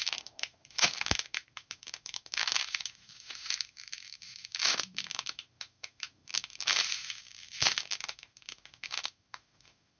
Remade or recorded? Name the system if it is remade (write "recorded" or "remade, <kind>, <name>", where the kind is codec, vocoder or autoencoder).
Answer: remade, autoencoder, DAC-VAE